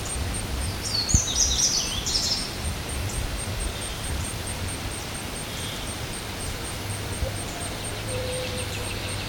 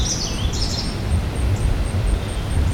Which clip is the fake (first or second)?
first